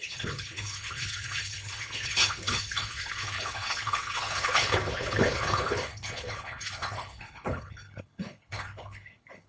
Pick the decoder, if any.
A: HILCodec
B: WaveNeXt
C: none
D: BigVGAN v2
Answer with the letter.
A